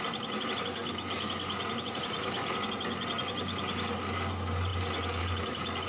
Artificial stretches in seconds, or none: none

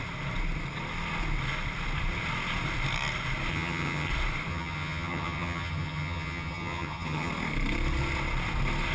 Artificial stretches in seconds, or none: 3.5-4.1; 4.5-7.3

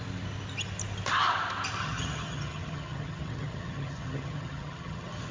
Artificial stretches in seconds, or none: 1.8-5.3

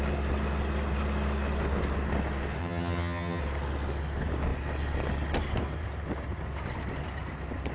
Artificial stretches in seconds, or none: 2.6-3.4

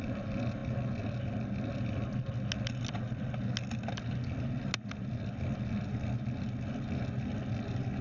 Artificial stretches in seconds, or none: none